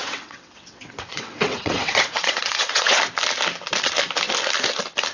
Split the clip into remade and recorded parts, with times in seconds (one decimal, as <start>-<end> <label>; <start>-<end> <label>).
0.0-3.0 remade; 3.0-5.1 recorded